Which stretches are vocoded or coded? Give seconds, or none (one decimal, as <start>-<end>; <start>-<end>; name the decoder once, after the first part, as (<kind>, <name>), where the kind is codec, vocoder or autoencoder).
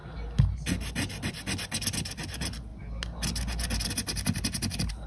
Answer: none